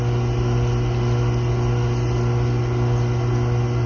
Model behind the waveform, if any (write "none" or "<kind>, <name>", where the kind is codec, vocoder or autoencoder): none